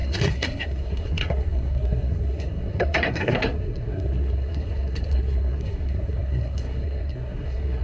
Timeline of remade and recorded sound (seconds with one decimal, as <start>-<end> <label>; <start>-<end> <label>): 0.0-7.8 remade